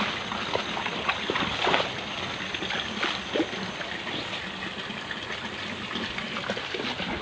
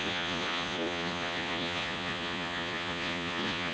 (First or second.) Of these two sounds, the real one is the first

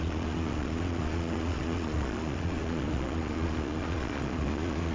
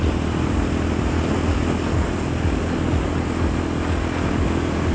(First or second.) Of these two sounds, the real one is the second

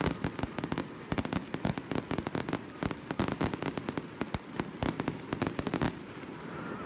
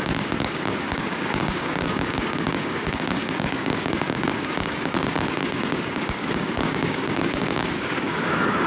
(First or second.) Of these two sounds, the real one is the first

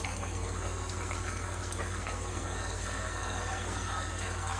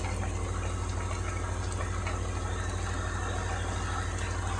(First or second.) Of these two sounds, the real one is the second